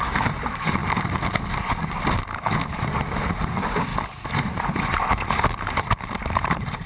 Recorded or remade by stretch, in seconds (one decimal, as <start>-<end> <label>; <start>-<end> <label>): 0.0-0.8 remade; 0.8-2.6 recorded; 2.6-3.9 remade; 3.9-4.6 recorded; 4.6-6.9 remade